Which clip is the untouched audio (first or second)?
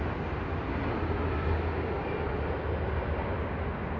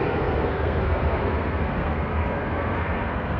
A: first